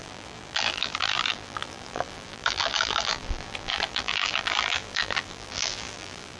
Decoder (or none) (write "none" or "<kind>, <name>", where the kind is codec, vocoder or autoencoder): vocoder, BigVGAN v2